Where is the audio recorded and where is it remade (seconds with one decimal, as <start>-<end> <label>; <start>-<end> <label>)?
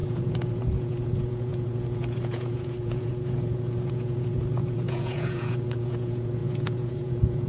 0.0-7.5 remade